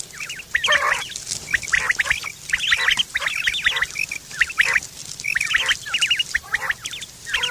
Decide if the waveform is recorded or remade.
recorded